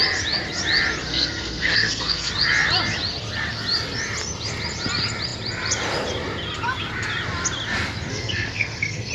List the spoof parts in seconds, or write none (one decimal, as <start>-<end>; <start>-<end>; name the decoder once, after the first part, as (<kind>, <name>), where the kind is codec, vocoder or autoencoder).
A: 1.1-2.3 (codec, SNAC); 8.1-9.1